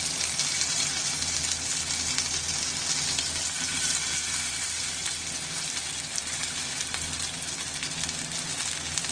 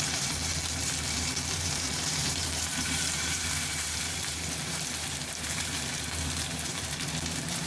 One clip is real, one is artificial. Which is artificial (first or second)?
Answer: second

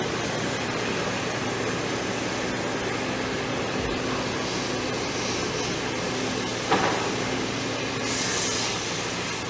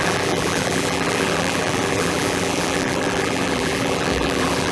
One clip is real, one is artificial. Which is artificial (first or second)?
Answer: second